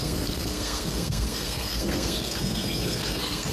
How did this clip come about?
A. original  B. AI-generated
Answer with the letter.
B